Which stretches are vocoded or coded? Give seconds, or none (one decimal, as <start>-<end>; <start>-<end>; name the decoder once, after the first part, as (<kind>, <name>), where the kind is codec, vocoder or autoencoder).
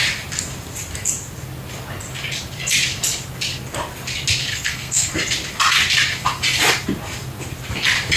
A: 4.5-5.1 (codec, SNAC)